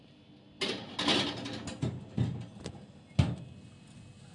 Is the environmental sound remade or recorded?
recorded